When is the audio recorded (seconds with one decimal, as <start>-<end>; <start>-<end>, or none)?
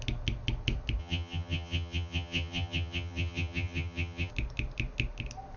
0.0-1.0; 4.3-5.6